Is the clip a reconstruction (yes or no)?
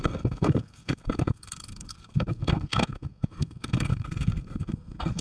yes